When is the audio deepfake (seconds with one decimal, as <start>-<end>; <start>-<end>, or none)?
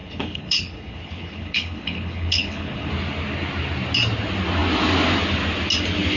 0.0-2.9